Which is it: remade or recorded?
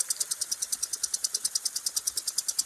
recorded